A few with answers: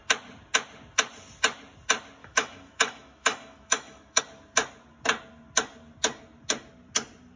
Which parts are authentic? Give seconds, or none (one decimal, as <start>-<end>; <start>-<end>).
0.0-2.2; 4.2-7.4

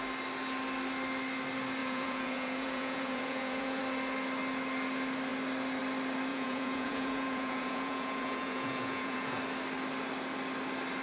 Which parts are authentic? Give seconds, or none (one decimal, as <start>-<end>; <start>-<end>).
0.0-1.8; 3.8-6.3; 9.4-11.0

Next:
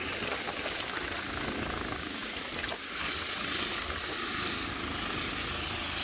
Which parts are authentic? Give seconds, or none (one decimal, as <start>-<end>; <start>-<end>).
0.0-6.0

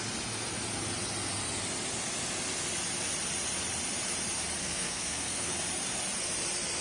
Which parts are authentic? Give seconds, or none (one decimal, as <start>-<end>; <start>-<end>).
0.0-4.6; 5.5-6.8

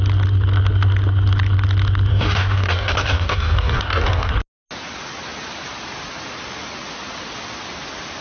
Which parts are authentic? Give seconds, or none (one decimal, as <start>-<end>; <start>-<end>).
0.0-2.1; 4.3-8.2

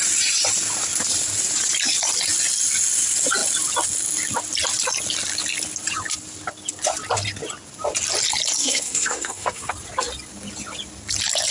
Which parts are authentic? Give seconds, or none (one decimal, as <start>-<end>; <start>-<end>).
0.0-8.6; 9.7-11.5